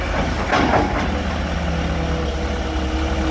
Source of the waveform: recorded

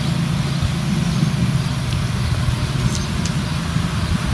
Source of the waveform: recorded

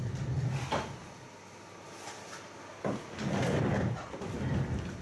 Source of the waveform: recorded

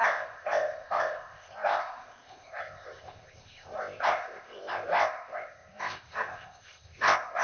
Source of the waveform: remade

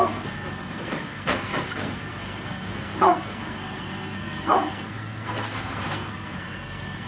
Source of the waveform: remade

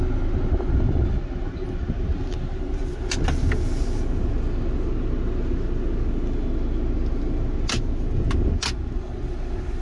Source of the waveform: recorded